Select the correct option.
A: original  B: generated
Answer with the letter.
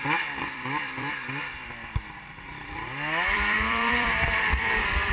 B